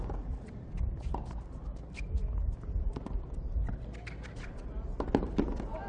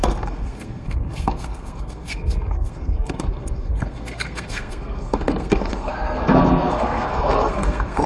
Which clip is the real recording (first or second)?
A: first